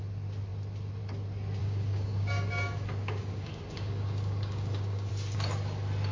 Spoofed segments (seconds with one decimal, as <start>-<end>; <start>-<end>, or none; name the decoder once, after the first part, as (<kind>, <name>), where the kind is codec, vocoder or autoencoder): 1.6-5.1 (codec, DAC)